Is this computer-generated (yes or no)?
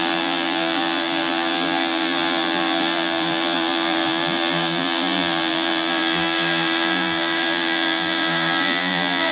yes